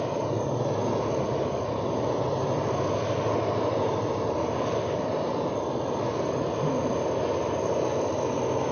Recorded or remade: recorded